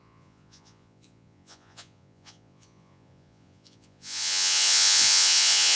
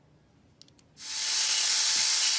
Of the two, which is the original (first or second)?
second